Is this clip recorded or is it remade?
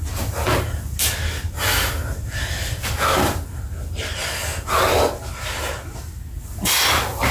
recorded